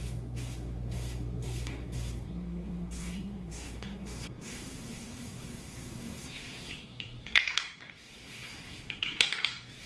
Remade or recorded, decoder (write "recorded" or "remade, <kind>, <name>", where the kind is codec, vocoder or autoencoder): remade, codec, SNAC